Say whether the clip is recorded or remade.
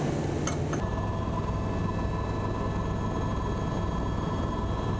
recorded